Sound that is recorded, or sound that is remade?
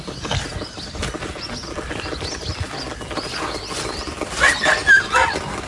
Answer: recorded